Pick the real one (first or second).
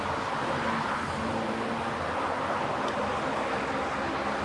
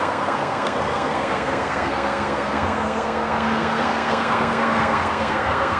first